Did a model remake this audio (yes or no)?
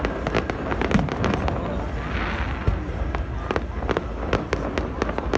no